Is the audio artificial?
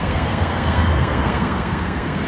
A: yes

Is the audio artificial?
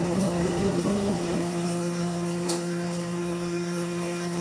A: yes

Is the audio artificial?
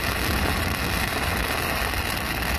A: no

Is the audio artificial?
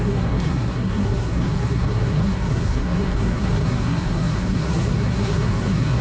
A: yes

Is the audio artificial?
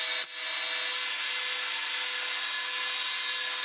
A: no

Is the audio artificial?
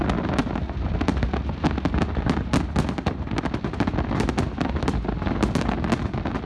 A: no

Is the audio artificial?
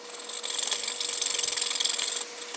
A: no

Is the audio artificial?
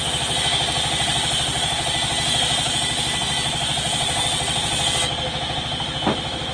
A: no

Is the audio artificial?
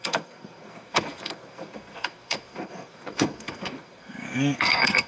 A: yes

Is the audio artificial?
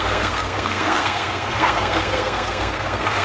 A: yes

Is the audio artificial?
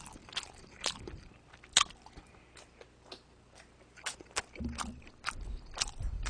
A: no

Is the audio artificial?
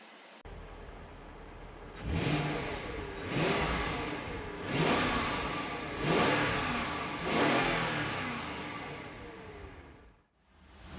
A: no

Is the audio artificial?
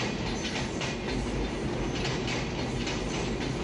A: no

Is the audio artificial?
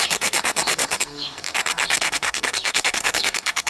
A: yes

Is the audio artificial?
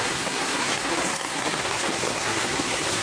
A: yes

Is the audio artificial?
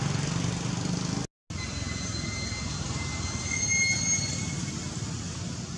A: no